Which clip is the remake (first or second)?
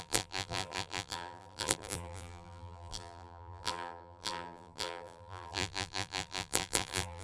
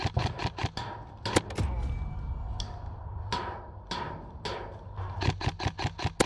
first